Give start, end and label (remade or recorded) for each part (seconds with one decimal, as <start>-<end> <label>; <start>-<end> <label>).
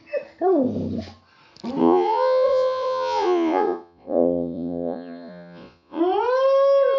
0.0-1.8 recorded; 1.8-6.0 remade; 6.0-7.0 recorded